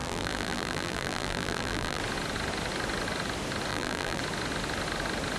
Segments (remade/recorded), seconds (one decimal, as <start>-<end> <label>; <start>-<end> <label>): 0.0-2.0 remade; 2.0-3.7 recorded; 3.7-4.2 remade; 4.2-5.4 recorded